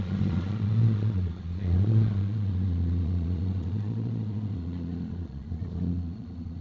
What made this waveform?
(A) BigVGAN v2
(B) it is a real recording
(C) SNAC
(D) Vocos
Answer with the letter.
D